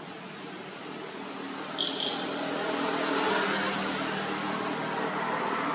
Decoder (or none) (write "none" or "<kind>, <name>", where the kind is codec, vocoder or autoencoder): none